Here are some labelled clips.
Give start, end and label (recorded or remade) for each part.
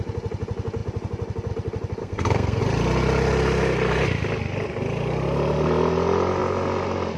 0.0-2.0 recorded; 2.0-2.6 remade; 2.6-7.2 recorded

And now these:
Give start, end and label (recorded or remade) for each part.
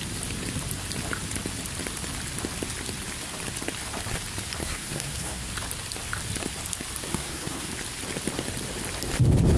0.0-4.6 recorded; 4.6-5.5 remade; 5.5-7.1 recorded; 7.1-7.7 remade; 7.7-9.6 recorded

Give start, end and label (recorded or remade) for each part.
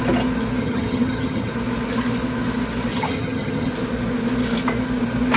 0.0-0.6 recorded; 0.6-1.5 remade; 1.5-2.9 recorded; 2.9-3.7 remade; 3.7-5.4 recorded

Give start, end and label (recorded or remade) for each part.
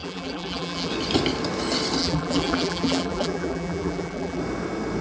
0.0-0.9 remade; 0.9-2.0 recorded; 2.0-4.4 remade; 4.4-5.0 recorded